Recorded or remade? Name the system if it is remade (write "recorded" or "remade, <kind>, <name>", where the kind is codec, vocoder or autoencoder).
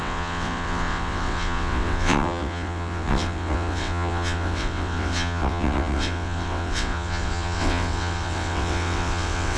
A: remade, vocoder, WaveNeXt